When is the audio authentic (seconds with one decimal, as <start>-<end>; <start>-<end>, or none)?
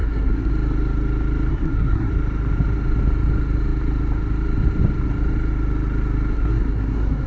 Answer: 0.5-1.5; 2.1-6.3